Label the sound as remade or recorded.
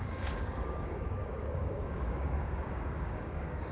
remade